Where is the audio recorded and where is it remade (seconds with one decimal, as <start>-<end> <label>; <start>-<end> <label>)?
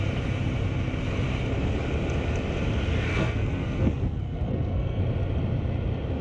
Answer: 0.0-3.1 recorded; 3.1-5.0 remade; 5.0-6.2 recorded